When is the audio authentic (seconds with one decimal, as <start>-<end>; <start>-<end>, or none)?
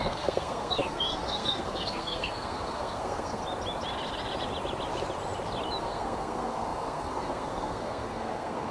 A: 3.4-5.8